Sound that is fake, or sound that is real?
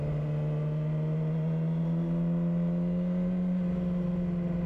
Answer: real